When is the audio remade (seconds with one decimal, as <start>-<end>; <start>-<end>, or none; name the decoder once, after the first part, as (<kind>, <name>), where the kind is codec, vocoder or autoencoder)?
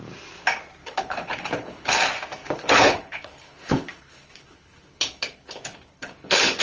0.8-1.9 (codec, HILCodec); 2.4-6.6